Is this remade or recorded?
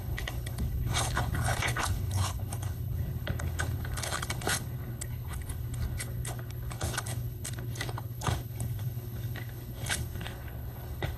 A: remade